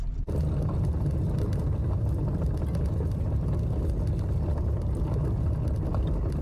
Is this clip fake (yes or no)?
no